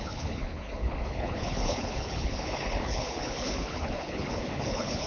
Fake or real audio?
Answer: fake